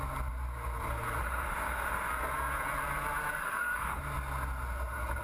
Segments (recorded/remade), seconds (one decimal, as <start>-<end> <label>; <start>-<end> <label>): 0.0-1.2 recorded; 1.2-2.1 remade; 2.1-3.4 recorded; 3.4-4.0 remade; 4.0-5.2 recorded